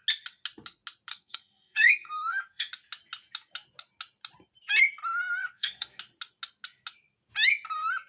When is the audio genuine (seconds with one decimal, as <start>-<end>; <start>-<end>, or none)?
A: 0.0-1.1; 2.7-5.4; 6.0-8.1